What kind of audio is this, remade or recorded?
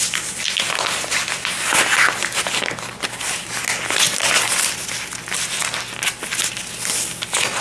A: recorded